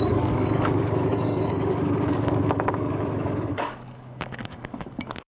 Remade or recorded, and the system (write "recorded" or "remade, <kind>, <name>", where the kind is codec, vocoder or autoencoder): remade, codec, DAC